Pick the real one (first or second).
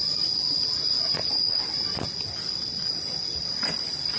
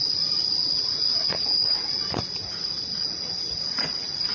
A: first